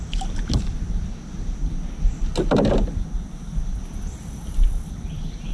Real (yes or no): yes